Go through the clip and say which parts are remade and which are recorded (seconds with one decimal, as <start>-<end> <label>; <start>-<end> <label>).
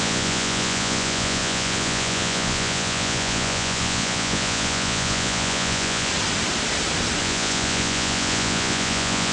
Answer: 0.0-6.1 remade; 6.1-7.2 recorded; 7.2-9.3 remade